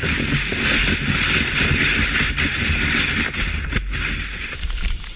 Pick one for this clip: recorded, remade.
recorded